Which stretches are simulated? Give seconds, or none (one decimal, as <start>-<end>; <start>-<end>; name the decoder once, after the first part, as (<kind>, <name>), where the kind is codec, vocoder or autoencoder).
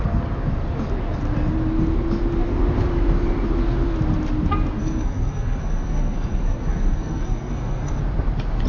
4.8-8.0 (codec, SNAC)